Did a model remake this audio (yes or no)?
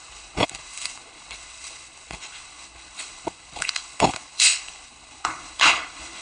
yes